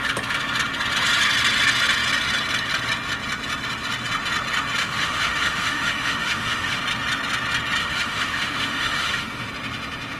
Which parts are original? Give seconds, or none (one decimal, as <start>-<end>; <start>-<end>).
0.0-4.8; 6.8-7.8; 9.5-10.2